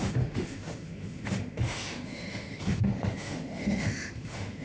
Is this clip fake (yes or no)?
yes